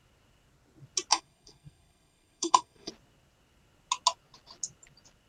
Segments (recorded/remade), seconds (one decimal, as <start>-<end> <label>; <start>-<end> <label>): 0.0-1.1 recorded; 1.1-2.9 remade; 2.9-5.3 recorded